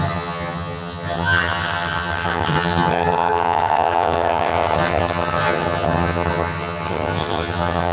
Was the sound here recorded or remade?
remade